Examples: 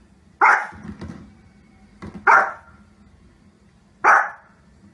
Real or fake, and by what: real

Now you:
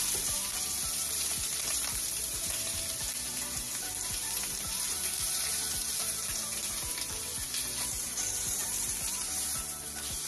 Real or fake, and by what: fake, vocoder, BigVGAN v2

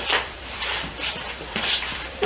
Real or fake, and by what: fake, vocoder, BigVGAN v2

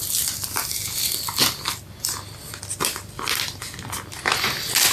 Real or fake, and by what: real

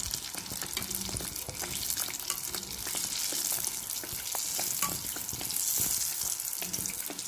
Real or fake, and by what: real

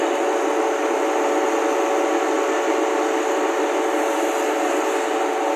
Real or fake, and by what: real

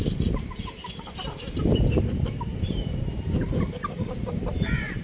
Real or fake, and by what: fake, vocoder, BigVGAN v2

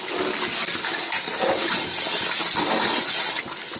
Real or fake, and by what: real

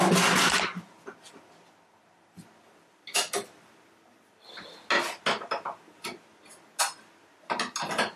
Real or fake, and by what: real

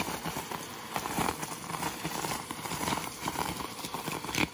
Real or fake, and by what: fake, vocoder, BigVGAN v2